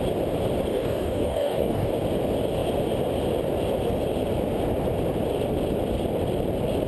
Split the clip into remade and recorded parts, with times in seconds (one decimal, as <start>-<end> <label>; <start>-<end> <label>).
0.0-0.7 recorded; 0.7-1.9 remade; 1.9-6.9 recorded